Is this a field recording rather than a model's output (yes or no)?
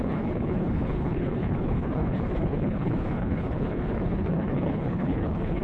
no